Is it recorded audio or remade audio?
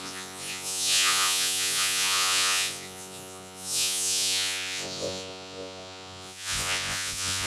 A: remade